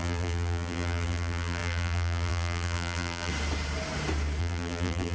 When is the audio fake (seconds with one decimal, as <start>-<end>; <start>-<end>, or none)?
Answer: 0.0-3.3; 4.4-5.1